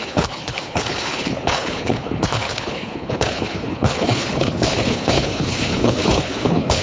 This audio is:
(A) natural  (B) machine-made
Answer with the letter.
B